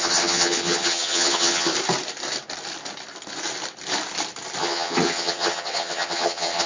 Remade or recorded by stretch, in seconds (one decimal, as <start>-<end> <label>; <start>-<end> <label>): 0.0-1.7 remade; 1.7-4.6 recorded; 4.6-6.7 remade